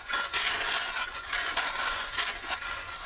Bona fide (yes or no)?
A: no